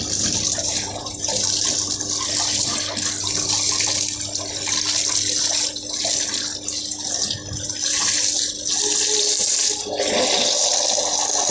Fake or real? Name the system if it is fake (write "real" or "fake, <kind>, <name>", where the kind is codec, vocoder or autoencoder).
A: real